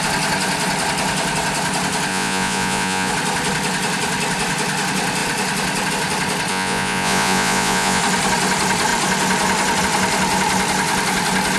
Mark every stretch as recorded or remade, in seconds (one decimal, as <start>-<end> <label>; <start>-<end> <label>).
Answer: 0.0-2.1 recorded; 2.1-3.1 remade; 3.1-6.5 recorded; 6.5-8.0 remade; 8.0-11.6 recorded